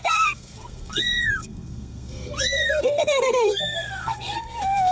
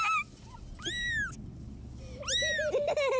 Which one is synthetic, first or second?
first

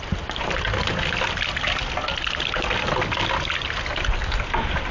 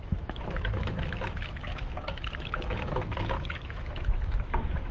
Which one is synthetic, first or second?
second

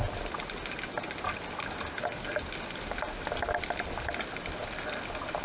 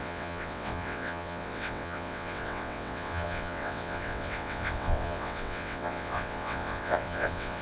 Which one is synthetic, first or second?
second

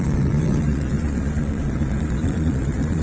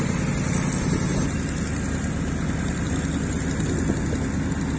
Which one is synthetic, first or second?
first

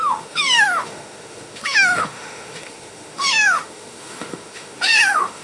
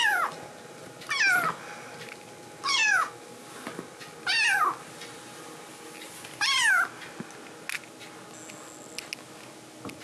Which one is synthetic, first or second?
first